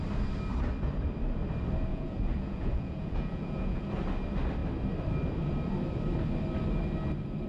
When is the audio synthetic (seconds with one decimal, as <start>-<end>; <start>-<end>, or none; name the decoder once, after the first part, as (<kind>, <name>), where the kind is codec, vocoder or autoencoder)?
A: 1.9-3.9 (vocoder, Vocos)